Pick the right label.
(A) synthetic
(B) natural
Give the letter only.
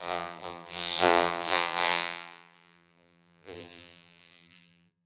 A